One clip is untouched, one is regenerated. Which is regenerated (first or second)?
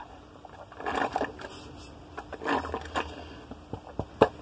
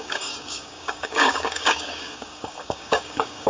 second